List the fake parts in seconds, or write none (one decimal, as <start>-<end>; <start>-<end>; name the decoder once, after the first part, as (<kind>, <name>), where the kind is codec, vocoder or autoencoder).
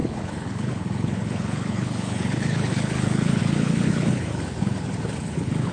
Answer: 0.0-5.7 (codec, HILCodec)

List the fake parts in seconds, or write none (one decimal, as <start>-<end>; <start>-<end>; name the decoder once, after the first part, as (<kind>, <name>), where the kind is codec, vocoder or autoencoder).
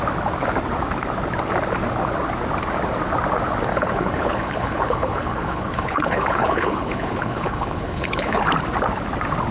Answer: 3.7-8.4 (codec, HILCodec)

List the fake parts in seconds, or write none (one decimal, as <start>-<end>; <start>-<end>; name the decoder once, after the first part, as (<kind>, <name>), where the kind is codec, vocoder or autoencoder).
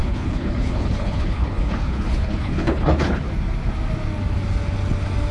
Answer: 0.0-3.2 (codec, HILCodec)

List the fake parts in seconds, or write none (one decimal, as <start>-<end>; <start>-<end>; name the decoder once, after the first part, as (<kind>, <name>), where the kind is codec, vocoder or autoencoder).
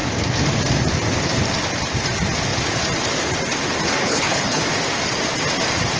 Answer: 4.0-4.6 (codec, HILCodec)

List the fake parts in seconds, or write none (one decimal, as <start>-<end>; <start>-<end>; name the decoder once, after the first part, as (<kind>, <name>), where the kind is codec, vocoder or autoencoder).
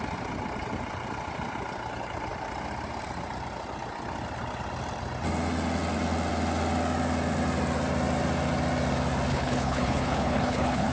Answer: 9.3-10.9 (codec, HILCodec)